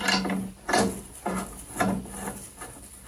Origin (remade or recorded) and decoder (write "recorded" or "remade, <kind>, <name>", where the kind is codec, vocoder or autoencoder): recorded